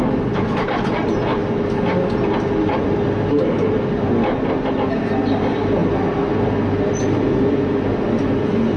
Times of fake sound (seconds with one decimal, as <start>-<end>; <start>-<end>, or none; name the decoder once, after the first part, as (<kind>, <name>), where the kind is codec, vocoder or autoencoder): none